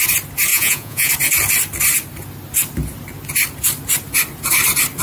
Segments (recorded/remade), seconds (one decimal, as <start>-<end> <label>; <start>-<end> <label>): 0.0-0.5 recorded; 0.5-1.1 remade; 1.1-5.0 recorded